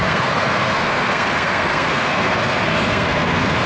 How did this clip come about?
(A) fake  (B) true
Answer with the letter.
A